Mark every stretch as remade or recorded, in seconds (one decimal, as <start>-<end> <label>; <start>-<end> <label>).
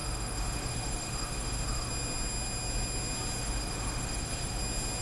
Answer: 0.0-1.9 remade; 1.9-3.4 recorded; 3.4-4.6 remade; 4.6-5.0 recorded